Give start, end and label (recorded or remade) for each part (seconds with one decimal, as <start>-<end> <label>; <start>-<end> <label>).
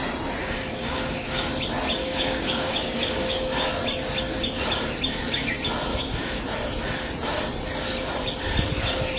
0.0-0.4 recorded; 0.4-1.5 remade; 1.5-2.0 recorded; 2.0-3.7 remade; 3.7-5.9 recorded; 5.9-6.4 remade; 6.4-9.2 recorded